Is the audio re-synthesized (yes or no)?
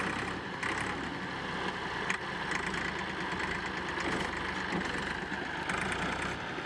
no